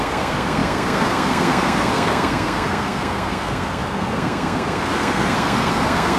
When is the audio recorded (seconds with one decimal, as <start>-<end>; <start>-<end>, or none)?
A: none